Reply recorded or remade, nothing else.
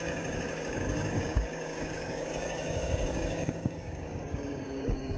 remade